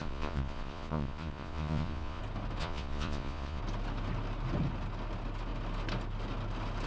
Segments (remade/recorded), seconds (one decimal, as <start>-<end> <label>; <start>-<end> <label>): 0.0-2.2 remade; 2.2-2.6 recorded; 2.6-3.6 remade; 3.6-6.9 recorded